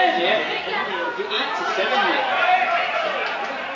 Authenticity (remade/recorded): recorded